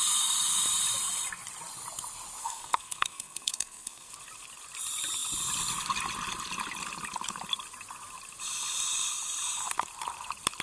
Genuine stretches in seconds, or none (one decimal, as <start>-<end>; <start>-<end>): 0.0-2.4; 4.1-10.6